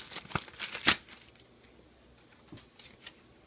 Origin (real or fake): real